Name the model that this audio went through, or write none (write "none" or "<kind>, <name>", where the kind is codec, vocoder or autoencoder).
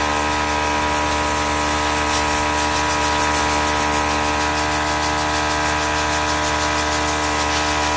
none